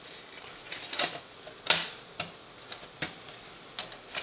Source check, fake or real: real